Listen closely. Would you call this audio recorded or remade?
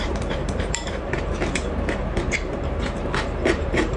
remade